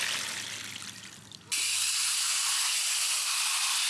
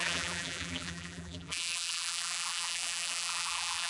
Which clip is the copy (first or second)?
second